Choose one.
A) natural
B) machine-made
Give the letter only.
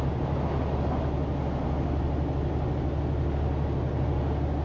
A